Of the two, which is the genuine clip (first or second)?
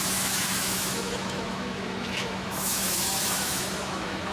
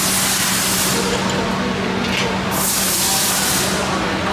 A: second